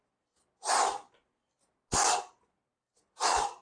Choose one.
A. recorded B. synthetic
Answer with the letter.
A